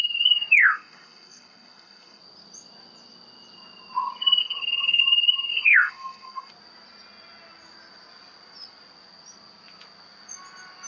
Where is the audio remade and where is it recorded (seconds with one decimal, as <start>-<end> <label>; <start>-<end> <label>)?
0.0-0.6 recorded; 0.6-2.2 remade; 2.2-4.4 recorded; 4.4-5.0 remade; 5.0-5.5 recorded; 5.5-6.5 remade; 6.5-10.9 recorded